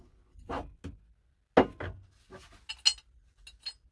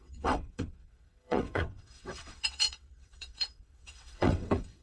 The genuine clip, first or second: first